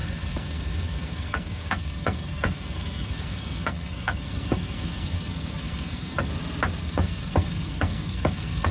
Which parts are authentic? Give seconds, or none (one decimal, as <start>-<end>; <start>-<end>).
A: 6.3-6.8